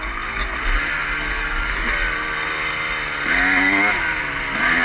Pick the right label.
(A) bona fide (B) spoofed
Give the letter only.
A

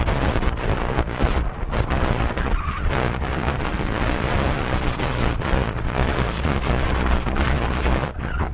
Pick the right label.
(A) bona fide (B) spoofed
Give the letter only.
B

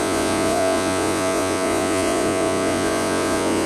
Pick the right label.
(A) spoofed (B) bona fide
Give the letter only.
A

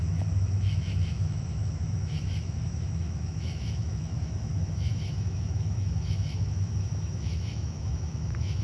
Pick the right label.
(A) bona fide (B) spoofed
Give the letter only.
B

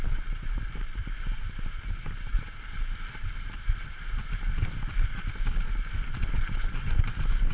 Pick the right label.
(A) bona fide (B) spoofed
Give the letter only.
A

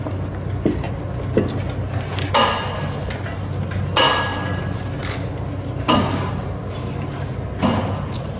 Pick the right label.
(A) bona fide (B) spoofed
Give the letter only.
A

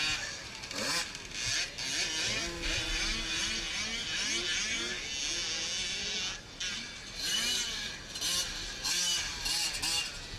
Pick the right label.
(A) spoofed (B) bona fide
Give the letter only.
B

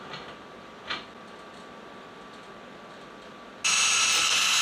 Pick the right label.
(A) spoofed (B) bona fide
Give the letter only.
B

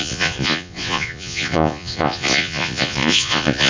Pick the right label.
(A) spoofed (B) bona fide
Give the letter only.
A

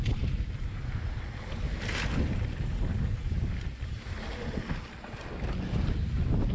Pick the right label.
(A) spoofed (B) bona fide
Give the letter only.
B